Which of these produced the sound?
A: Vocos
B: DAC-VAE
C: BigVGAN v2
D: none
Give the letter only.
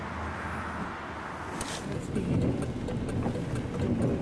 D